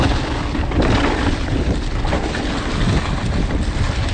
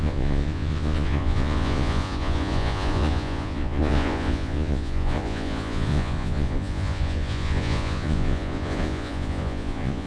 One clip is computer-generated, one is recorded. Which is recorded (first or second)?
first